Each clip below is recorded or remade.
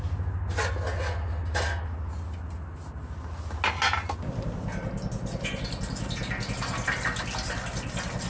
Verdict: recorded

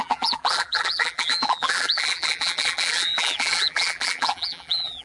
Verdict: remade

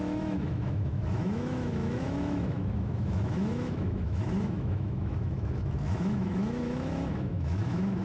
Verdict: remade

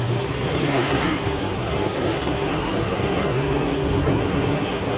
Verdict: remade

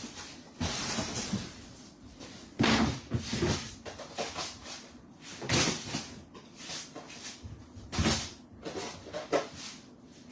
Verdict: recorded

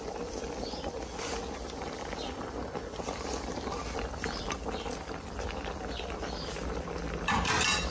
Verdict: recorded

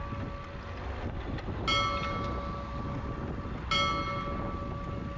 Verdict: recorded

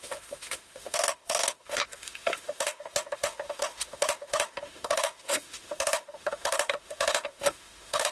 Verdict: remade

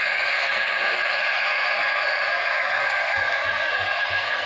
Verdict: remade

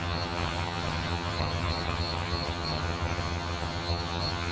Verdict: remade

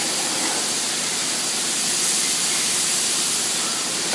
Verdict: recorded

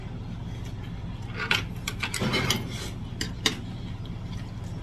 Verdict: recorded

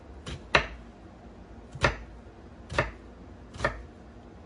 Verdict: recorded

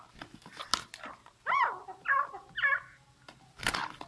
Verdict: recorded